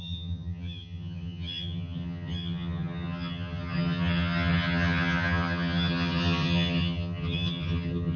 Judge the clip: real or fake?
fake